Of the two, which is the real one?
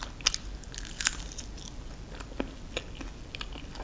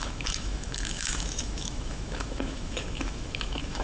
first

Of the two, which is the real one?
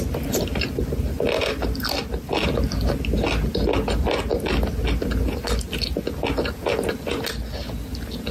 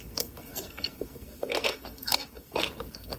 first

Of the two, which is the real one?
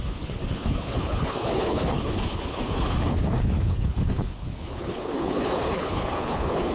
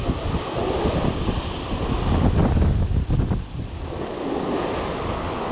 second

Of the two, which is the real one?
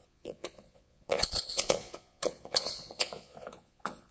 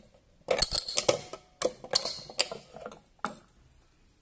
second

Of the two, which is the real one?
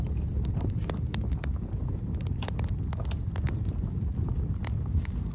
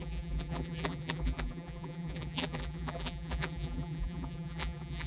first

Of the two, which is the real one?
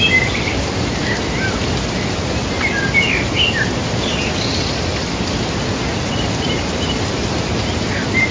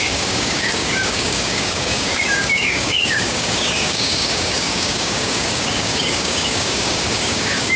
first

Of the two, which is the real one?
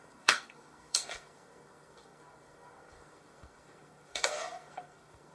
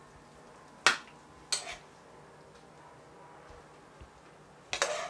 second